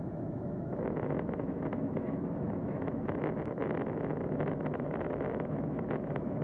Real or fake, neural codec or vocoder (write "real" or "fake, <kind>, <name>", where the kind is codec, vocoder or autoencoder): fake, autoencoder, DAC-VAE